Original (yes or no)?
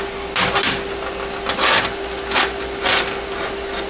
yes